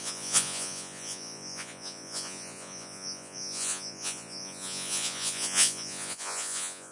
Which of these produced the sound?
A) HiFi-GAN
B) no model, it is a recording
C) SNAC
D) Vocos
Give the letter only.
D